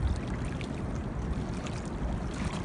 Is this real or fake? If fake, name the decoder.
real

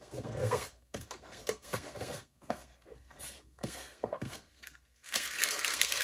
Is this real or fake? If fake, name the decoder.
fake, codec, SNAC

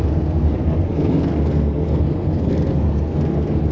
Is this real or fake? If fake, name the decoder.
fake, codec, SNAC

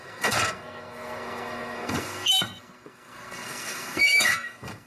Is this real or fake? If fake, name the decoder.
fake, codec, SNAC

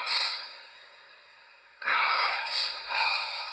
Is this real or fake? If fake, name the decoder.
fake, codec, SNAC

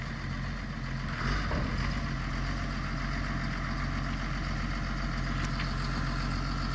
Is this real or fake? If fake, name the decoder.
real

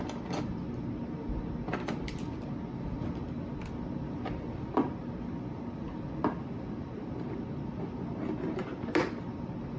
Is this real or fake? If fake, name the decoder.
real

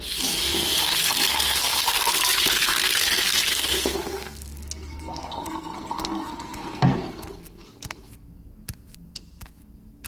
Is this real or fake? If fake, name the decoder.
fake, codec, SNAC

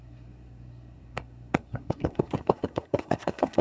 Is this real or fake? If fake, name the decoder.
fake, codec, SNAC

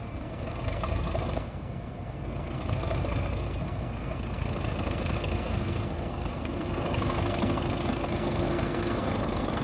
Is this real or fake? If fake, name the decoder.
fake, codec, SNAC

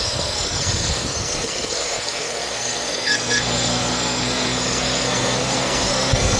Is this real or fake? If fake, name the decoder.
fake, codec, SNAC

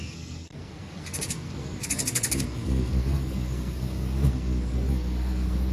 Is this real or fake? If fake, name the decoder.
fake, codec, SNAC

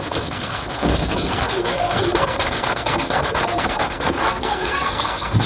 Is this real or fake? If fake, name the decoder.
fake, codec, SNAC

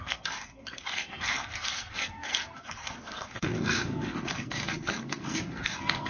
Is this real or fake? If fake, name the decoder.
fake, codec, SNAC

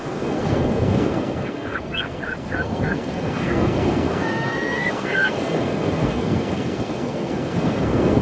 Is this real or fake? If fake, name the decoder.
fake, codec, SNAC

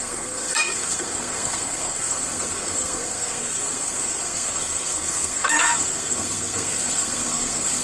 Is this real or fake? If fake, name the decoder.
fake, codec, SNAC